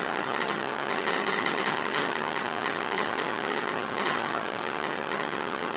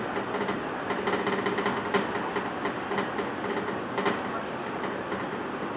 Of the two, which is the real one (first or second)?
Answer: second